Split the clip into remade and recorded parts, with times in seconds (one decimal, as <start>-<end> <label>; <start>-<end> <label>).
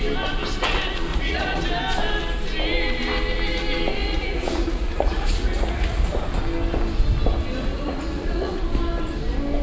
0.0-1.1 recorded; 1.1-1.6 remade; 1.6-4.0 recorded; 4.0-6.0 remade; 6.0-7.7 recorded; 7.7-8.6 remade; 8.6-9.6 recorded